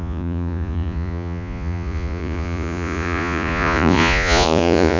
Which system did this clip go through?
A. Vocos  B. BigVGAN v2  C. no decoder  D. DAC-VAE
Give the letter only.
A